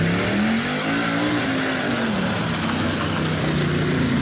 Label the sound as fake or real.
real